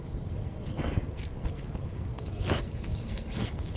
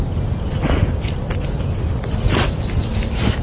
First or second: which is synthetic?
first